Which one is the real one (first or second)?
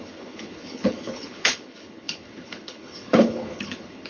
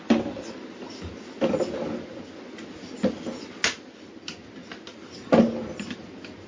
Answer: second